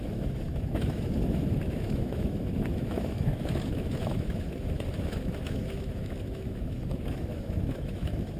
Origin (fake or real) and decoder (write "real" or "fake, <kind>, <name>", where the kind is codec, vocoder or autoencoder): fake, autoencoder, DAC-VAE